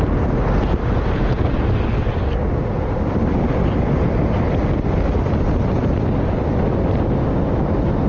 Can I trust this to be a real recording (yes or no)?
yes